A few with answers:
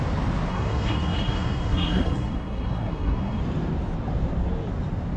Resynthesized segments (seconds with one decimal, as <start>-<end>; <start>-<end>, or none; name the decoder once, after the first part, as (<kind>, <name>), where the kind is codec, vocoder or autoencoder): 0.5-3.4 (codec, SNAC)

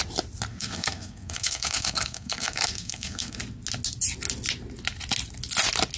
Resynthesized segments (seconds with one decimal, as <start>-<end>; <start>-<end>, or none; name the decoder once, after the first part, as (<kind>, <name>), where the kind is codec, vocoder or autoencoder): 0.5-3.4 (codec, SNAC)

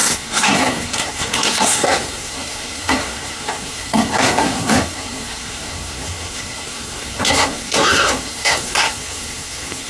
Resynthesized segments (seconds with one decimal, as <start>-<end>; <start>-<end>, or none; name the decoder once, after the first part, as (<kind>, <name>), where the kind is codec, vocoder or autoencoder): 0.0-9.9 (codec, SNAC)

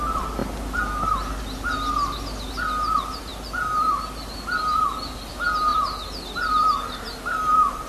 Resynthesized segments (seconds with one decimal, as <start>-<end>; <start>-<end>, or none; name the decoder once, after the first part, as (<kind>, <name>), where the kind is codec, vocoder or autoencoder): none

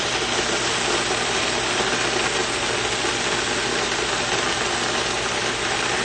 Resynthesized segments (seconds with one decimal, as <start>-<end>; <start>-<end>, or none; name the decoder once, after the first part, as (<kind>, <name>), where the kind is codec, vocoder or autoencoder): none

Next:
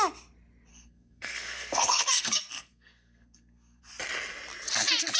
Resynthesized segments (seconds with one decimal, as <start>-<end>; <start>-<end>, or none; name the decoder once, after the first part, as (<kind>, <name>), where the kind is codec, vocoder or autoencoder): 0.7-3.8 (codec, SNAC)

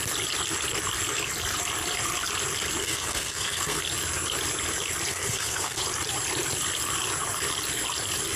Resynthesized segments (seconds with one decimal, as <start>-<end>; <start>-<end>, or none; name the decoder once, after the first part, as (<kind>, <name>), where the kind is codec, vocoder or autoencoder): 2.8-3.8 (codec, SNAC); 5.1-5.8

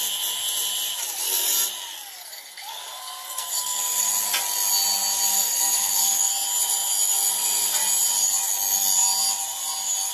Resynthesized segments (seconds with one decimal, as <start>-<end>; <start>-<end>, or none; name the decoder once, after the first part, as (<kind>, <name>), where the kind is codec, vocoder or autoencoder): 2.2-4.1 (codec, SNAC); 5.3-6.3